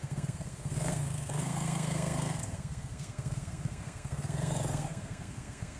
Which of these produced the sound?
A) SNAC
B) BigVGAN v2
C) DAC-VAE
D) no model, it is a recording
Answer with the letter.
A